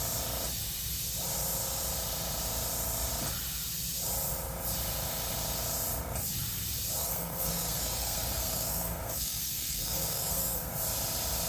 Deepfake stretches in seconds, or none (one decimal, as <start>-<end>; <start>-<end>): 7.0-10.7